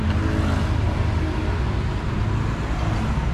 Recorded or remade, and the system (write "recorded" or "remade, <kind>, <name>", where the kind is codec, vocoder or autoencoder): recorded